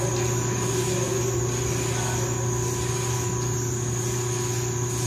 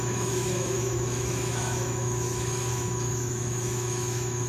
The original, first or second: first